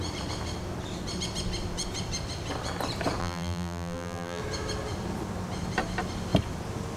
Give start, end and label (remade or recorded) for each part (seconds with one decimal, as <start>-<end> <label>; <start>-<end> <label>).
0.0-3.2 recorded; 3.2-4.4 remade; 4.4-7.0 recorded

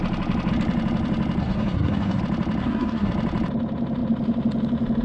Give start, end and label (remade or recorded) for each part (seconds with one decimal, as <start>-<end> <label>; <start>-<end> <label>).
0.0-1.4 recorded; 1.4-2.2 remade; 2.2-2.6 recorded; 2.6-3.1 remade; 3.1-5.0 recorded

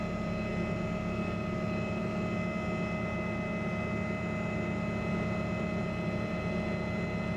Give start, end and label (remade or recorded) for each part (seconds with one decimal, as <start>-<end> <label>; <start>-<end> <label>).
0.0-7.4 recorded

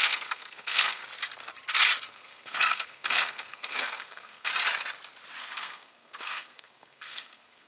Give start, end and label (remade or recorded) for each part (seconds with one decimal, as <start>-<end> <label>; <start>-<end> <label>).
0.0-1.0 remade; 1.0-2.1 recorded; 2.1-4.5 remade; 4.5-5.4 recorded; 5.4-7.7 remade

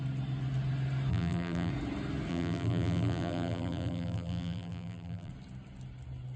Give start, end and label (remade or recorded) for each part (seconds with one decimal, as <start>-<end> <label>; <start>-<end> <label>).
0.0-1.1 recorded; 1.1-1.7 remade; 1.7-2.3 recorded; 2.3-5.3 remade; 5.3-6.4 recorded

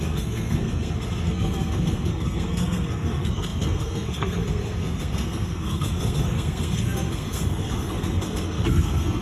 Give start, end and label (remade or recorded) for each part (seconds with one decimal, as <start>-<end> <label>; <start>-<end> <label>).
0.0-9.2 remade